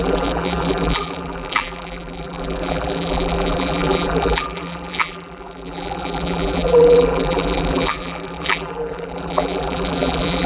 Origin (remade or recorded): remade